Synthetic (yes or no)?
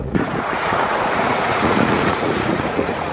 yes